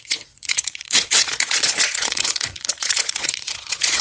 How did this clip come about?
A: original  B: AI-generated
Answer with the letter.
B